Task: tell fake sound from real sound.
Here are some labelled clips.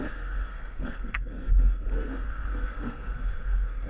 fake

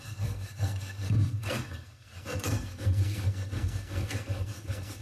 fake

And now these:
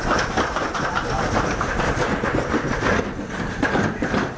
real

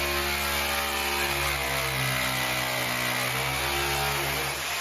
real